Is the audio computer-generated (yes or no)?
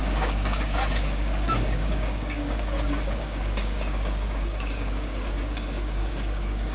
yes